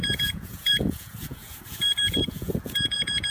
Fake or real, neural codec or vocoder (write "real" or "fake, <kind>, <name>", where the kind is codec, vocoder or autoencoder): fake, vocoder, Vocos